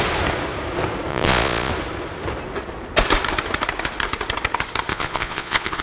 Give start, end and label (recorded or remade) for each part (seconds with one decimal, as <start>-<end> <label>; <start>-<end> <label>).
0.0-1.1 recorded; 1.1-1.7 remade; 1.7-4.9 recorded; 4.9-5.8 remade